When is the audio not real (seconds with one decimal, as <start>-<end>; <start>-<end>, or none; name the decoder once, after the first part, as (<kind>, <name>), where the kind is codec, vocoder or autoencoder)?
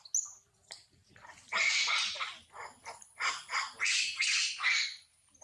none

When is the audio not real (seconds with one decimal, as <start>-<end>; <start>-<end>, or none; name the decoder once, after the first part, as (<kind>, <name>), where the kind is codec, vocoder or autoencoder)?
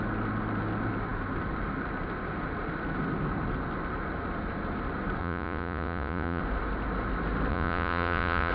5.2-6.4 (vocoder, Vocos); 7.5-8.5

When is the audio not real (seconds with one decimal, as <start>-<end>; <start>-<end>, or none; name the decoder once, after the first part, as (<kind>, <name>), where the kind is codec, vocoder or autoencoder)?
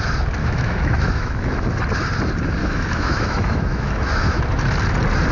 0.4-1.8 (autoencoder, DAC-VAE); 2.6-4.4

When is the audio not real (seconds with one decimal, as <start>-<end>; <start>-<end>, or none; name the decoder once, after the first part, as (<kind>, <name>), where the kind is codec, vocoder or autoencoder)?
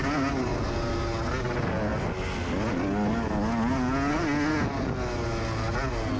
none